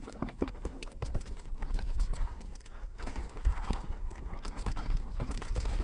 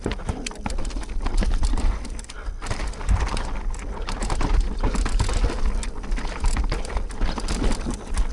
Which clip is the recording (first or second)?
second